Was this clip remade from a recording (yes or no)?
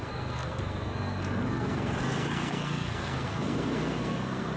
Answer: yes